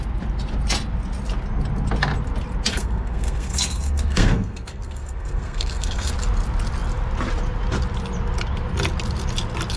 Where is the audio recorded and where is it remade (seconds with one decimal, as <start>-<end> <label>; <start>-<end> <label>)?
0.0-2.7 recorded; 2.7-6.1 remade; 6.1-9.8 recorded